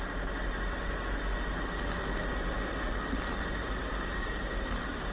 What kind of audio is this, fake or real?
real